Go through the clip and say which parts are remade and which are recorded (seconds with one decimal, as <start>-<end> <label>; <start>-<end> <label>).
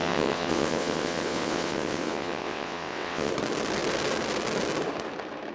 0.0-3.3 remade; 3.3-5.5 recorded